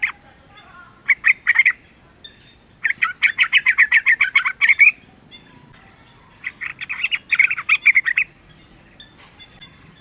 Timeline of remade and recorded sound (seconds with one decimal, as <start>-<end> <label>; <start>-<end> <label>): 0.0-10.0 recorded